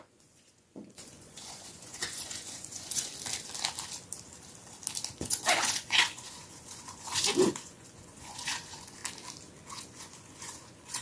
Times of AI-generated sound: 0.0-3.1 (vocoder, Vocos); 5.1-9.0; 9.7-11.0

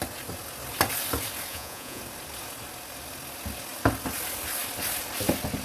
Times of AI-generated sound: 1.5-2.0 (vocoder, Vocos)

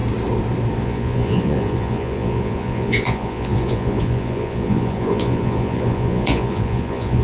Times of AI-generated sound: 0.8-7.2 (vocoder, Vocos)

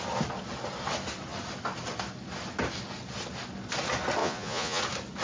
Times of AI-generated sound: 4.2-4.8 (vocoder, Vocos)

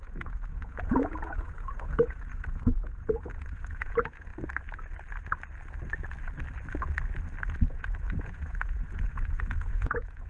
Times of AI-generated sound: 0.0-4.3 (vocoder, Vocos); 7.7-10.3

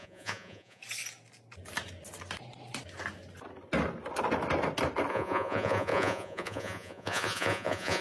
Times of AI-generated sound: 0.0-0.8 (vocoder, Vocos); 5.1-8.0

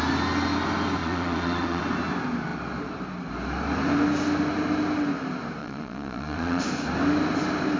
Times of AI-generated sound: 1.0-1.8 (vocoder, Vocos); 5.6-6.6

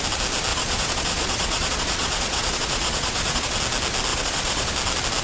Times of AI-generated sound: 0.5-3.6 (vocoder, Vocos); 4.1-4.7